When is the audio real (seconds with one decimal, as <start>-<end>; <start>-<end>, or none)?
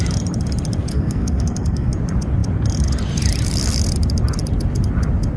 0.0-0.9; 1.9-5.4